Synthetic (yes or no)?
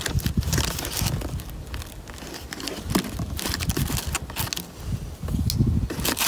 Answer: no